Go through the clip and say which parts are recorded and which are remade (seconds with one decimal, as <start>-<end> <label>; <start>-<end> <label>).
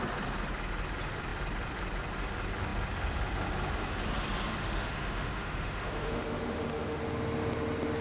0.0-4.6 recorded; 4.6-7.0 remade; 7.0-8.0 recorded